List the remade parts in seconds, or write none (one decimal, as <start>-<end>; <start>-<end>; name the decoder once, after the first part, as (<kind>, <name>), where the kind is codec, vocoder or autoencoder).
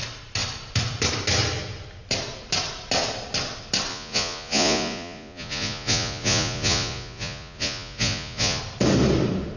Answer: 3.9-8.6 (vocoder, Vocos)